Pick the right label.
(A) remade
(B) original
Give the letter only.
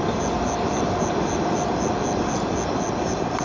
B